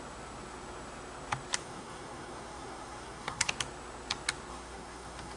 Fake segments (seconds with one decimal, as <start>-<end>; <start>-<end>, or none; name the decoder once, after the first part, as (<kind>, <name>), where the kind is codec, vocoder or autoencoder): 1.6-3.5 (codec, SNAC); 4.5-5.4

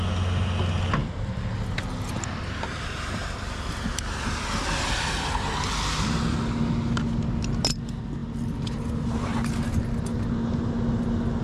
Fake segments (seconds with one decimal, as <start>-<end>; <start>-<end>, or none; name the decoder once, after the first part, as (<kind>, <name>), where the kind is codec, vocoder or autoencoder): 1.0-1.8 (vocoder, BigVGAN v2); 3.2-4.0; 8.2-8.9

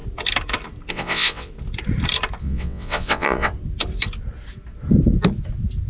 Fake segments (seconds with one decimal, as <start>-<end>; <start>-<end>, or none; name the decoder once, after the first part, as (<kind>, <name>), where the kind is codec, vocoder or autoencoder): 0.9-1.5 (vocoder, WaveNeXt); 2.4-3.5

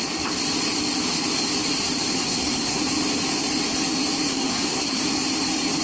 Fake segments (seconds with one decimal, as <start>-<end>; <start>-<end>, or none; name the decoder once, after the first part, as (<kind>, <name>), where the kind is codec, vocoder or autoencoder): 2.1-2.8 (codec, SNAC); 4.3-5.0

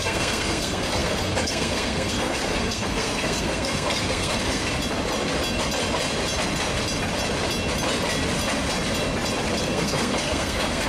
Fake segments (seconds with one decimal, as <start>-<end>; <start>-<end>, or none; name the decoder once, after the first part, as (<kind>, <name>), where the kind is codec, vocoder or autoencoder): 0.0-4.6 (codec, SNAC); 9.6-10.9

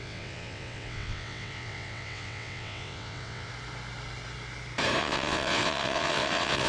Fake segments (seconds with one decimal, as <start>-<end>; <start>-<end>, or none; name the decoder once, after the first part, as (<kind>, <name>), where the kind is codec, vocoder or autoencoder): 0.0-3.5 (vocoder, WaveNeXt); 5.0-6.7

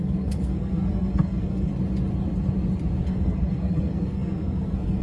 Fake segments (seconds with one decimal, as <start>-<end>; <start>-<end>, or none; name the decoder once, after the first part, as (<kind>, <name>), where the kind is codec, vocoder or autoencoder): 0.0-1.7 (codec, SNAC); 3.0-5.0